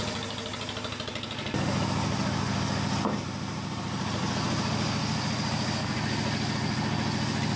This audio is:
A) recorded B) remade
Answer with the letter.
A